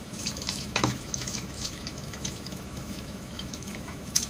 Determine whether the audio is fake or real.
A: fake